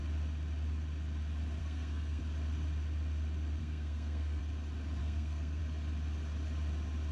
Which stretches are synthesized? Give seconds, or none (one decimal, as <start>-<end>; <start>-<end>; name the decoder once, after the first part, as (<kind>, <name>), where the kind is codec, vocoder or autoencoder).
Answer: 1.6-2.2 (codec, SNAC); 3.6-4.4; 5.0-5.6